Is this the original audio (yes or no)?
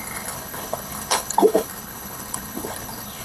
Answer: no